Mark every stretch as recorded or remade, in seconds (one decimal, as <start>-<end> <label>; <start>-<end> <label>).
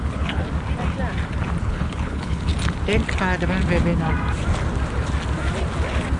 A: 0.0-0.4 remade; 0.4-1.6 recorded; 1.6-2.5 remade; 2.5-6.2 recorded